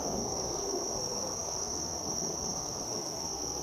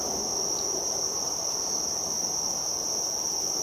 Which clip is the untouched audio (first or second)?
second